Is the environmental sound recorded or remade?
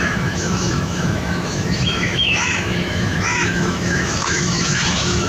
remade